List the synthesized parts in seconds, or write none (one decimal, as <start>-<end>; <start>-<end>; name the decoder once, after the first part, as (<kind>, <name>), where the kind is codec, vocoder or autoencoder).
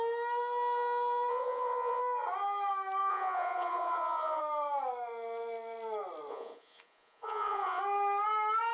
1.3-2.0 (vocoder, Vocos); 3.1-4.4; 6.3-7.8